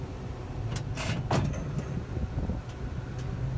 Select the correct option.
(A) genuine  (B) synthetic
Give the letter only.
A